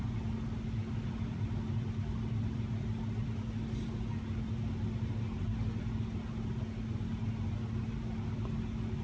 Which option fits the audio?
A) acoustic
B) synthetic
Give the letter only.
A